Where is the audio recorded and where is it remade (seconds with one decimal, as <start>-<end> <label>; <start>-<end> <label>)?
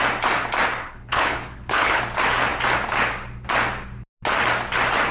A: 0.0-0.8 recorded; 0.8-2.0 remade; 2.0-5.1 recorded